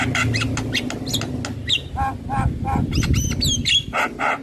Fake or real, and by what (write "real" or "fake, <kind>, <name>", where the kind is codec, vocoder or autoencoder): real